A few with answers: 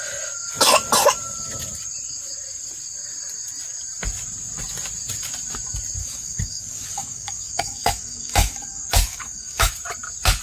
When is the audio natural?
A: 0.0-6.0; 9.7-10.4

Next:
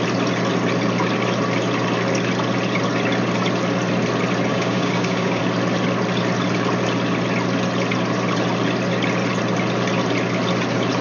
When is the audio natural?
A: 0.0-4.5; 5.4-11.0

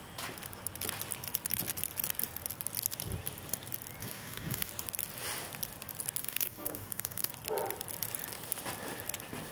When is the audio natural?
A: 0.0-4.0; 4.7-6.2; 7.3-9.5

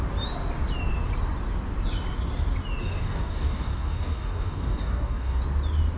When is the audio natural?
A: 0.0-2.8; 5.4-6.0